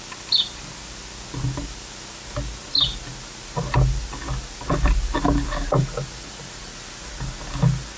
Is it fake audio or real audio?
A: real